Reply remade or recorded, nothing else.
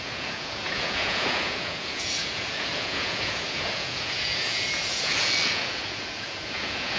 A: remade